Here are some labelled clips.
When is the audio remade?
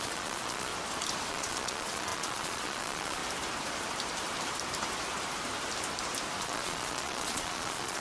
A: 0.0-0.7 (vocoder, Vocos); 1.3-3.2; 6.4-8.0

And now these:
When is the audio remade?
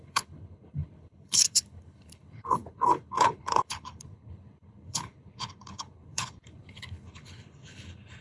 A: 0.0-8.2 (codec, HILCodec)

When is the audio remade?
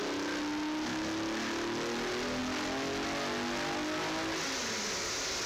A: none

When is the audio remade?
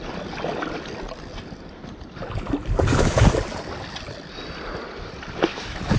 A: 2.9-3.4 (autoencoder, DAC-VAE); 5.5-6.0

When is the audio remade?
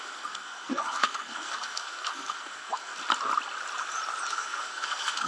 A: 0.0-2.9 (codec, SNAC); 4.3-5.3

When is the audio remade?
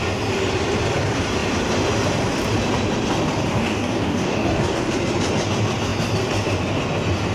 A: 3.5-4.9 (codec, DAC)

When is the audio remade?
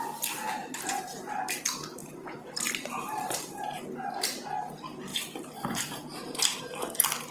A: 0.6-1.6 (vocoder, BigVGAN v2); 2.0-3.8; 5.1-6.6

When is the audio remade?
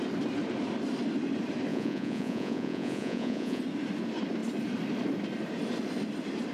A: 1.7-3.6 (vocoder, Vocos)